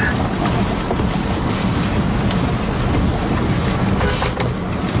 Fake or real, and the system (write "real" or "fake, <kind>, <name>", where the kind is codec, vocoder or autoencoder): real